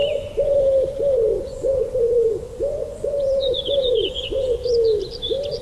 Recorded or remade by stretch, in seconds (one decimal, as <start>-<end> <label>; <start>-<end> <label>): 0.0-0.6 remade; 0.6-1.3 recorded; 1.3-4.7 remade; 4.7-5.6 recorded